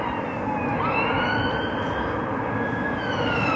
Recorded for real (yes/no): yes